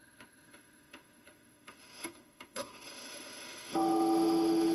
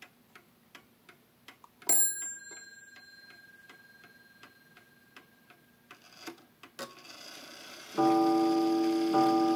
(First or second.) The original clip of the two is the second